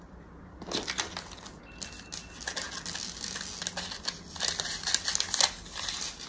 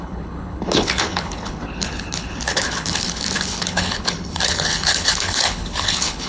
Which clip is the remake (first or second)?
second